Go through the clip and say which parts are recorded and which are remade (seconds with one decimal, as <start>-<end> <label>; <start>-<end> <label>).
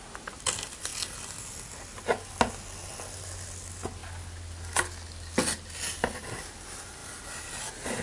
0.0-8.0 recorded